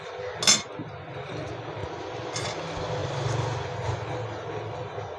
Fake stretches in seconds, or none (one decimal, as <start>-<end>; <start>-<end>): none